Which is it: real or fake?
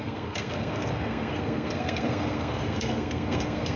fake